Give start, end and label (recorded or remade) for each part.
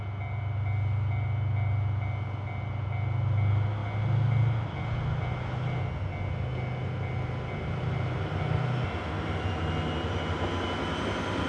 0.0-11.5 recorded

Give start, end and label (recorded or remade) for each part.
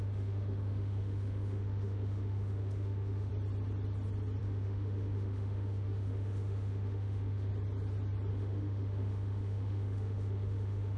0.0-3.3 remade; 3.3-4.4 recorded; 4.4-7.5 remade; 7.5-8.3 recorded; 8.3-11.0 remade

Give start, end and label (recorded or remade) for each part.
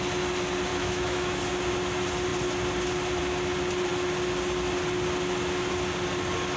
0.0-0.7 recorded; 0.7-1.4 remade; 1.4-6.6 recorded